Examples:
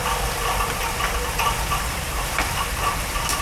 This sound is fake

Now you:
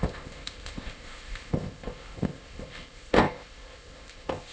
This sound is fake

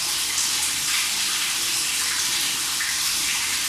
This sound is fake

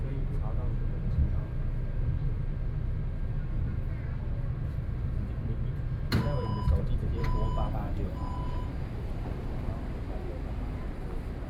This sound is real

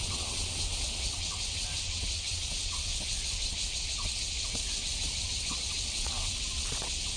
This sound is fake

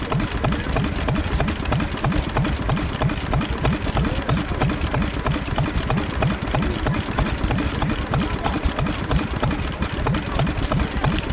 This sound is real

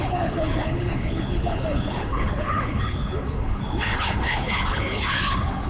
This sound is fake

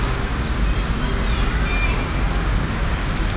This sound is real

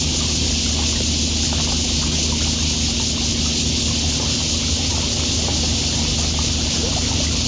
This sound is real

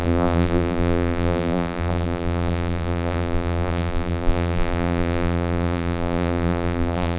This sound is fake